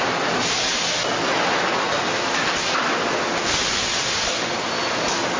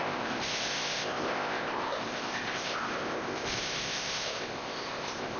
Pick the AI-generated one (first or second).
second